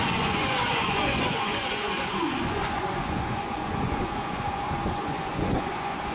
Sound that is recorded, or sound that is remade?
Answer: remade